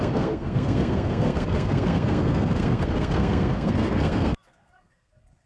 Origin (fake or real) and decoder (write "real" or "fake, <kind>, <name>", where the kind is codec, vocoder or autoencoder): fake, codec, SNAC